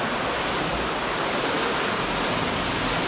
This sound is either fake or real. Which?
real